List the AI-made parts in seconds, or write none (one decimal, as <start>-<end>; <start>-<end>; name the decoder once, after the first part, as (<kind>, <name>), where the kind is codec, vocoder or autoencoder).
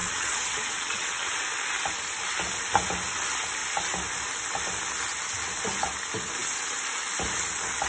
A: 0.0-1.3 (vocoder, WaveNeXt)